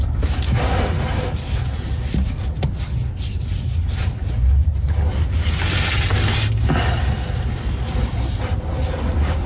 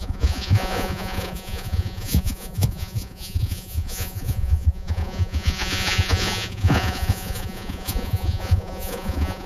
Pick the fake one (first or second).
second